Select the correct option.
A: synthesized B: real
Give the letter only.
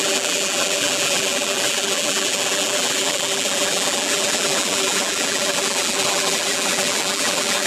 A